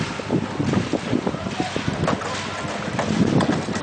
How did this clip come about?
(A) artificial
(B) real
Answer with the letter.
B